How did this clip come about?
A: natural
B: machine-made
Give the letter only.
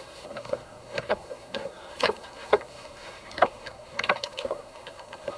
B